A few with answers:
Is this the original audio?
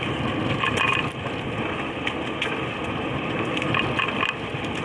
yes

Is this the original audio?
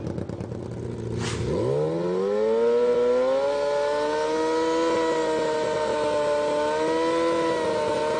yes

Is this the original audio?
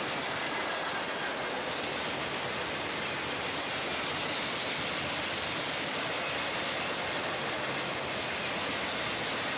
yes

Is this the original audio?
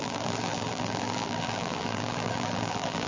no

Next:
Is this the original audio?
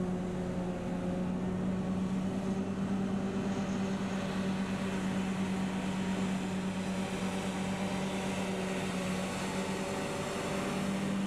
yes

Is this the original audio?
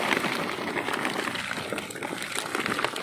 yes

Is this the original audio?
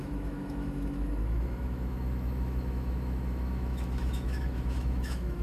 no